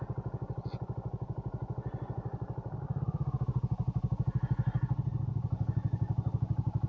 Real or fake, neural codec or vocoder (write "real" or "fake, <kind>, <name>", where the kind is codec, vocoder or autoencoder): real